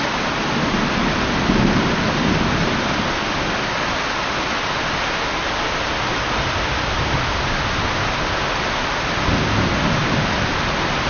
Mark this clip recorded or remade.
recorded